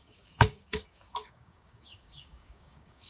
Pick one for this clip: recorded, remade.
remade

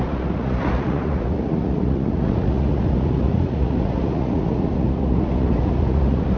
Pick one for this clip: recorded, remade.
remade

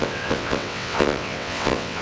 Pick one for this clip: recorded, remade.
remade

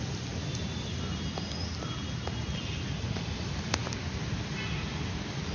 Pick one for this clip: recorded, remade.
recorded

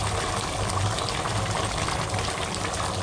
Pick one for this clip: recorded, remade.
recorded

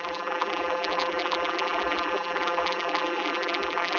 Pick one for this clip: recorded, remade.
remade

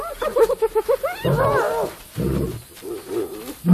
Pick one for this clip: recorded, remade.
recorded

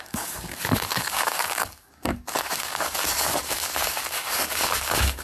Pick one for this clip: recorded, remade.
remade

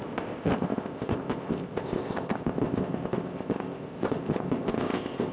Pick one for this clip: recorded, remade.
remade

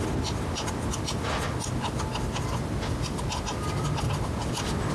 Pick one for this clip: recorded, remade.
recorded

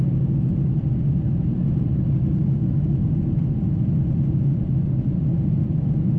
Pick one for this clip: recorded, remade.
recorded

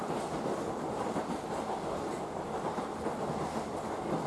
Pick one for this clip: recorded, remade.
recorded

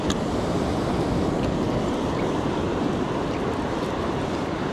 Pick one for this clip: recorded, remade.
recorded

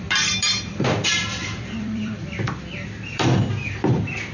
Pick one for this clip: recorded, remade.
remade